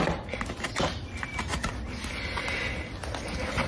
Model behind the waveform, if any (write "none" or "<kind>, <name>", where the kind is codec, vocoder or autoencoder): none